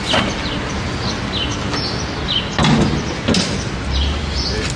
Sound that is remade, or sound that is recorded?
recorded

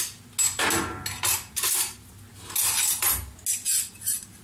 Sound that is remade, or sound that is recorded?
recorded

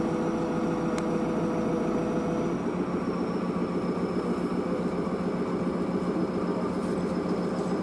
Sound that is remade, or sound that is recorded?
recorded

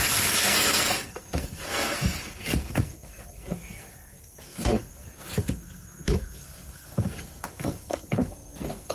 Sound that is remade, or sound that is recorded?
remade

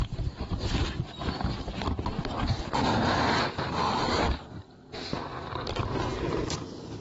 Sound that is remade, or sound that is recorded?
recorded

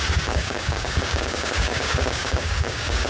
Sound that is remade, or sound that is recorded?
remade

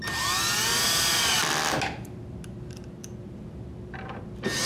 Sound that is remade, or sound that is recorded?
recorded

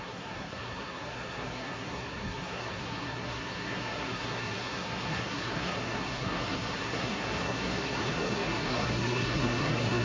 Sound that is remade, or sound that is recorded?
remade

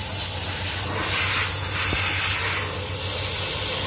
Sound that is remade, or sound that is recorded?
recorded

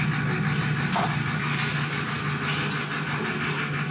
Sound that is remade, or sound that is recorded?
recorded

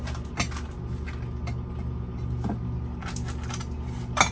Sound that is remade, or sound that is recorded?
recorded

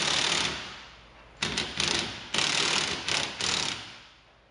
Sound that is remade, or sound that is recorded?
recorded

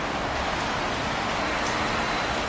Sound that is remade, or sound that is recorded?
recorded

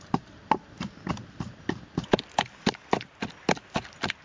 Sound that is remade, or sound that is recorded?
recorded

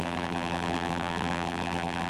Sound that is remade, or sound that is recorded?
remade